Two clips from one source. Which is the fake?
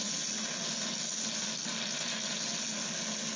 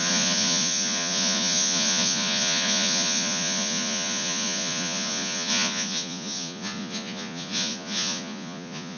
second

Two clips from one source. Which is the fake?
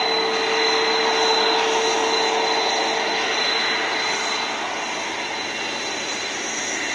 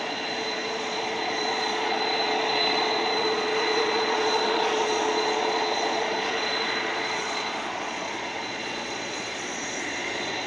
second